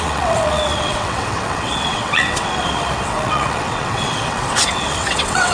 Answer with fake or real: fake